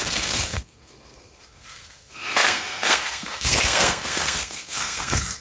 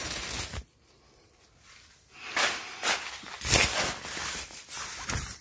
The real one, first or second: second